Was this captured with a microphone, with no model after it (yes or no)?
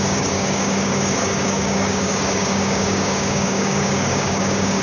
no